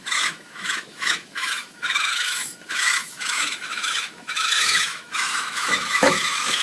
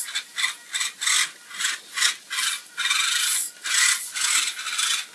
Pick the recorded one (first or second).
second